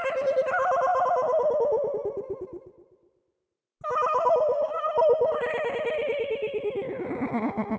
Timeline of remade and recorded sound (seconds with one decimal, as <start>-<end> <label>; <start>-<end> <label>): 0.0-7.8 recorded